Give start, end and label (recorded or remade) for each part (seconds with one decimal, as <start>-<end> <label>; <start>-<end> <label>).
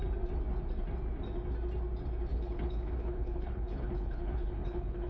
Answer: 0.0-2.3 recorded; 2.3-5.1 remade